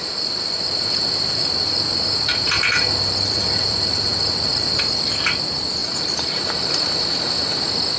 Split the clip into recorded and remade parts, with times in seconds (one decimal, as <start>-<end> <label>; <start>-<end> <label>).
0.0-4.8 remade; 4.8-5.8 recorded; 5.8-7.6 remade; 7.6-8.0 recorded